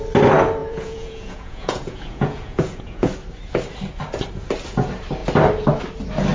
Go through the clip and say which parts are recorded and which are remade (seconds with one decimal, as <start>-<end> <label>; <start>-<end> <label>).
0.0-0.6 recorded; 0.6-3.1 remade; 3.1-6.3 recorded